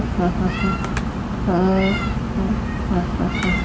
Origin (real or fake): real